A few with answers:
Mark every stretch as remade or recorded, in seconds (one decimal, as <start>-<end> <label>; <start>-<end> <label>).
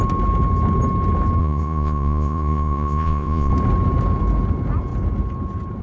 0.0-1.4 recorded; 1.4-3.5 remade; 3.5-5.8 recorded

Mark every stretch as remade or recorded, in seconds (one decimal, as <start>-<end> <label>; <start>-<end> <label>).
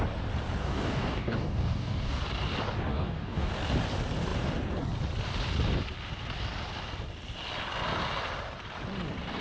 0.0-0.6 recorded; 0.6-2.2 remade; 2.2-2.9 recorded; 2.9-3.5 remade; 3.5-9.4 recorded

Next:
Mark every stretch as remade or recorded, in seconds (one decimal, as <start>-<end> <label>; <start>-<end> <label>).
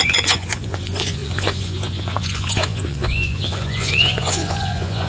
0.0-5.1 remade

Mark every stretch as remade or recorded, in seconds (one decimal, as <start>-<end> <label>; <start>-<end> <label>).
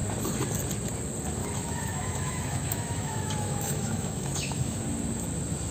0.0-1.4 recorded; 1.4-4.8 remade; 4.8-5.7 recorded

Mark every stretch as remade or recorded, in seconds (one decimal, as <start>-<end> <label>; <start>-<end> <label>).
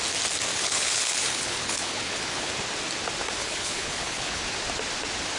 0.0-0.5 recorded; 0.5-2.5 remade; 2.5-3.4 recorded; 3.4-4.4 remade; 4.4-5.4 recorded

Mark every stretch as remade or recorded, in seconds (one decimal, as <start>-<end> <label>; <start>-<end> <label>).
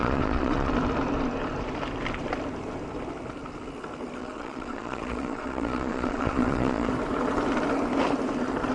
0.0-0.7 remade; 0.7-4.2 recorded; 4.2-6.9 remade; 6.9-8.7 recorded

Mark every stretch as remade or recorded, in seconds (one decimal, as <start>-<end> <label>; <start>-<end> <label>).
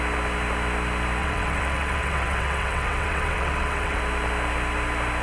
0.0-1.2 recorded; 1.2-4.0 remade; 4.0-5.2 recorded